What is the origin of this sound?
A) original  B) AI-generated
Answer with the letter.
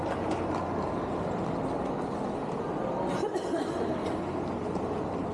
A